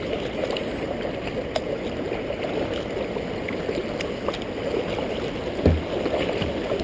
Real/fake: real